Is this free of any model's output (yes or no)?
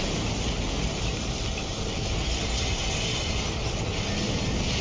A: yes